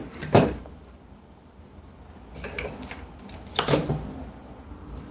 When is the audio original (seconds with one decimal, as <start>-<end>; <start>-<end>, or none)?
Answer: 3.1-3.8